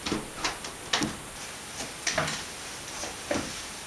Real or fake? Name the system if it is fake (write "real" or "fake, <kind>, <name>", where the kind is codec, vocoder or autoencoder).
real